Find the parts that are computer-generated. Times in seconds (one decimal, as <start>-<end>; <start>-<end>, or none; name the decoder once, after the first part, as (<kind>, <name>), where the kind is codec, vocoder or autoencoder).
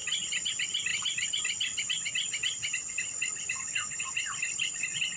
0.0-0.5 (vocoder, BigVGAN v2); 0.9-4.0